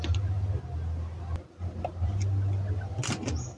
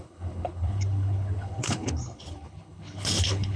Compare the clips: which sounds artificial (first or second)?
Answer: second